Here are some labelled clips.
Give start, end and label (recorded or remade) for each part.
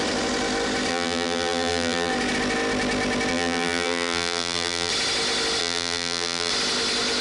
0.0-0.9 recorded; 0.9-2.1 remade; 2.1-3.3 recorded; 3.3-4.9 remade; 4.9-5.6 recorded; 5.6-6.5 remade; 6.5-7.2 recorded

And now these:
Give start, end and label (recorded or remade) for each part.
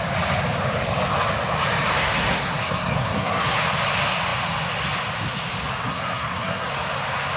0.0-1.9 recorded; 1.9-3.6 remade; 3.6-5.9 recorded; 5.9-6.7 remade; 6.7-7.4 recorded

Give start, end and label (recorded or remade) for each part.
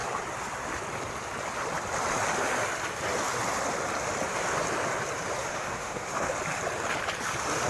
0.0-5.5 recorded; 5.5-6.3 remade; 6.3-7.7 recorded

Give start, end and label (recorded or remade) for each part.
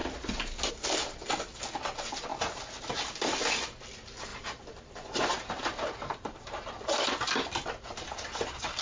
0.0-0.7 remade; 0.7-2.3 recorded; 2.3-3.1 remade; 3.1-4.3 recorded; 4.3-7.1 remade; 7.1-8.8 recorded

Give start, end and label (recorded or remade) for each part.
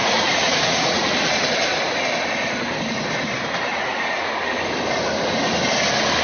0.0-1.5 remade; 1.5-3.7 recorded; 3.7-4.3 remade; 4.3-6.2 recorded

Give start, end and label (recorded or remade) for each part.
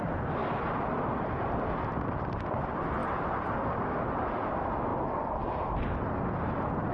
0.0-0.4 recorded; 0.4-1.7 remade; 1.7-3.0 recorded; 3.0-3.8 remade; 3.8-4.9 recorded; 4.9-5.9 remade; 5.9-6.9 recorded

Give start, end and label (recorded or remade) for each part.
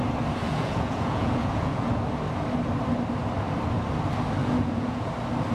0.0-0.4 recorded; 0.4-2.0 remade; 2.0-4.4 recorded; 4.4-5.1 remade; 5.1-5.5 recorded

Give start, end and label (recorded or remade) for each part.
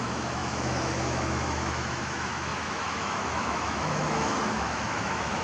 0.0-5.4 remade